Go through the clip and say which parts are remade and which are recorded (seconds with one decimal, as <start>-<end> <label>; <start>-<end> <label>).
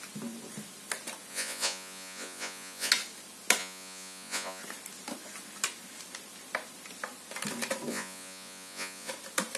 0.0-1.3 recorded; 1.3-2.9 remade; 2.9-3.6 recorded; 3.6-4.6 remade; 4.6-7.9 recorded; 7.9-9.1 remade; 9.1-9.6 recorded